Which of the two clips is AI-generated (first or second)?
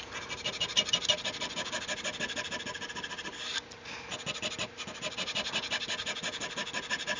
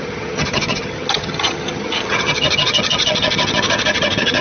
second